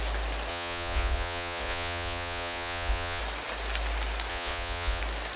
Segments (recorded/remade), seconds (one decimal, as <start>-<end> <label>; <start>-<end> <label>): 0.0-0.5 recorded; 0.5-3.2 remade; 3.2-4.3 recorded; 4.3-5.0 remade; 5.0-5.4 recorded